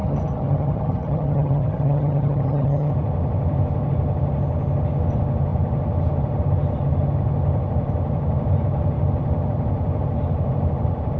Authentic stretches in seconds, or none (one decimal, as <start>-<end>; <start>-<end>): 2.9-11.2